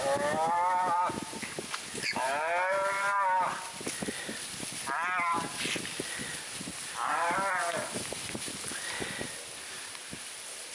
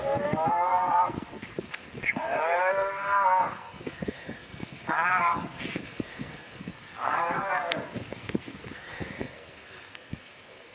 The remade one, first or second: second